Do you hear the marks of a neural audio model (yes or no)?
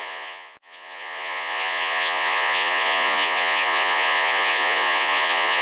yes